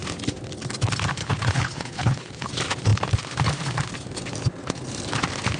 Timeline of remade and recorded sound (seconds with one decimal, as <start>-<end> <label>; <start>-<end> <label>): 0.0-1.2 recorded; 1.2-2.5 remade; 2.5-5.6 recorded